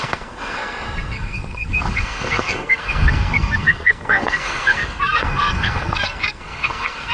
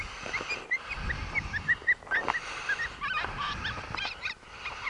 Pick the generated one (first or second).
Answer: first